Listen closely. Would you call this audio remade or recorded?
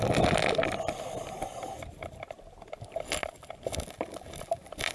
recorded